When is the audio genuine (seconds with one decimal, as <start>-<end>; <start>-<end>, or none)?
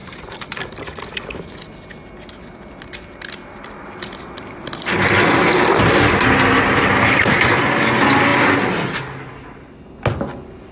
0.0-10.7